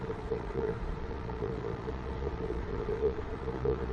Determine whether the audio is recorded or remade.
remade